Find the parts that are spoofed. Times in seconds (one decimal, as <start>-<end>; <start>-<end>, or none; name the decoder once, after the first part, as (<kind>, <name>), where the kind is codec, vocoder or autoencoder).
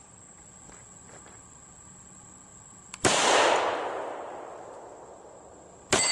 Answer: none